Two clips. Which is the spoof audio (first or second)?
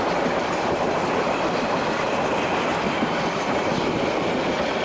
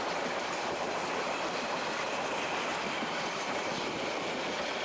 second